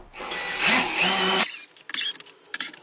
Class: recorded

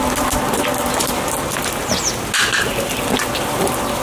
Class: recorded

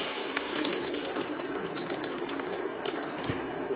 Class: remade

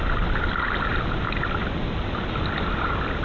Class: recorded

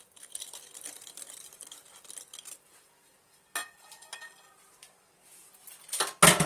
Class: recorded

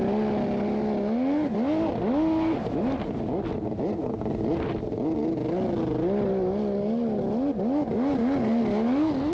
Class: recorded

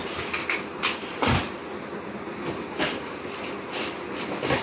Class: recorded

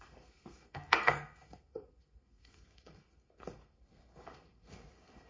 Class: remade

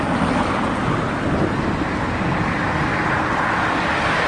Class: recorded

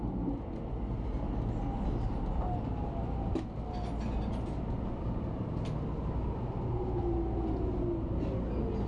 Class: recorded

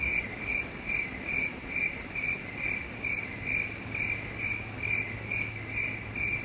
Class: recorded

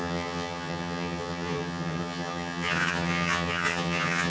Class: remade